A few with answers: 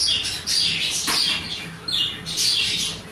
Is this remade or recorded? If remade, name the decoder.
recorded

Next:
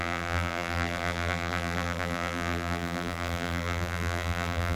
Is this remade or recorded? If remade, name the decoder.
remade, vocoder, BigVGAN v2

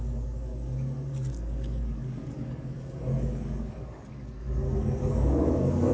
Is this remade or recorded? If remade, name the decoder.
remade, codec, DAC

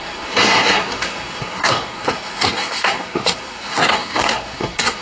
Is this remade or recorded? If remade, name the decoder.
remade, codec, SNAC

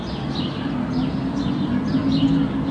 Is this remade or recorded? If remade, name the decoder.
recorded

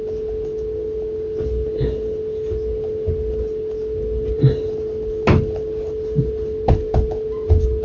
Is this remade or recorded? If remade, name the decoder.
recorded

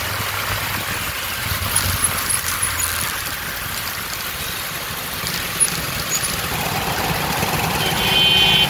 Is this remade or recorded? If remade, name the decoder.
recorded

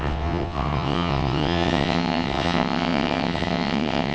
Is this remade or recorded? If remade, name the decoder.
remade, vocoder, WaveNeXt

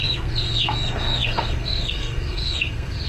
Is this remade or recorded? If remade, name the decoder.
remade, codec, SNAC